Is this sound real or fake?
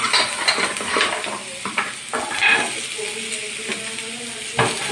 real